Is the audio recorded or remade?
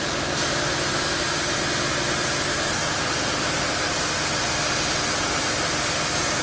recorded